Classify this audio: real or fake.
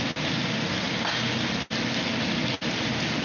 real